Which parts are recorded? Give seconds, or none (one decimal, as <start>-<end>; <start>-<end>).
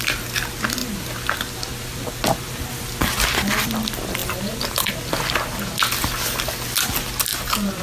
0.0-0.8; 2.1-4.2; 4.9-7.3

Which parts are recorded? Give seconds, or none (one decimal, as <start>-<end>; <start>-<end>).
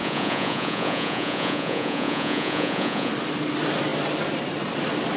3.1-5.2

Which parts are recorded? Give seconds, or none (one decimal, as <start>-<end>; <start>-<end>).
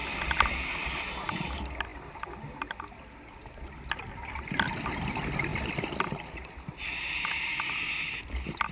0.0-8.7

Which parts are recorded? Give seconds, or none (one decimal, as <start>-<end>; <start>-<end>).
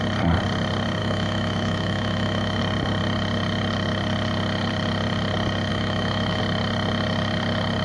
0.0-1.0; 2.6-5.7; 6.4-7.8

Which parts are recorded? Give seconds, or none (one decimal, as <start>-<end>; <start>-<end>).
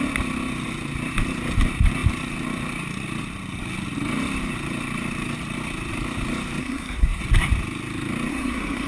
0.0-6.6; 7.2-8.3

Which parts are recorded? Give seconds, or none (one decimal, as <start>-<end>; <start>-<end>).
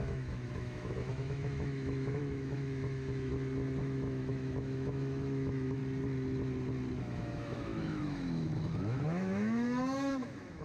3.3-3.8; 5.8-7.0